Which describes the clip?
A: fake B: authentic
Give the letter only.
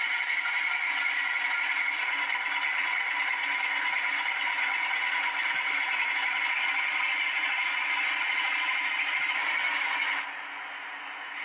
B